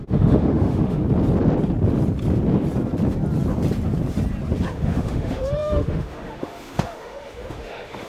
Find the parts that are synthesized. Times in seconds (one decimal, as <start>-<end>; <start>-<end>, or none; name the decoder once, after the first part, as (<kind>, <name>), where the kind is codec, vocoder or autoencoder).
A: 0.0-1.0 (autoencoder, DAC-VAE); 4.7-8.1